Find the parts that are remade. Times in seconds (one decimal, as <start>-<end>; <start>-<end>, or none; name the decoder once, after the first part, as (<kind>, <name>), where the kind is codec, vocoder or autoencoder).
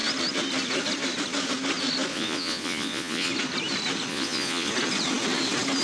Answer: 2.1-3.3 (vocoder, Vocos); 4.1-4.7